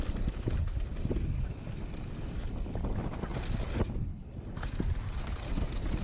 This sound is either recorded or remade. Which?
recorded